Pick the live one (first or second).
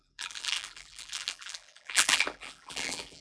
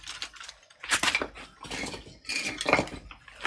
second